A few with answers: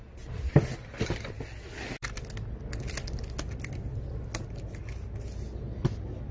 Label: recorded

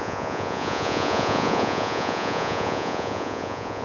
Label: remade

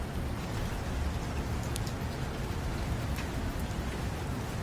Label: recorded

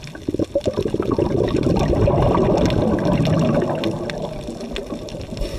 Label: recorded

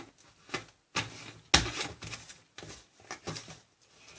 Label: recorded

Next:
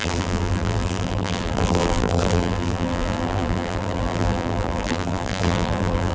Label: remade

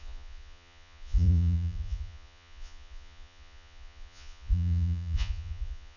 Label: remade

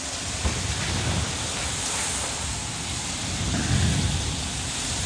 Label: recorded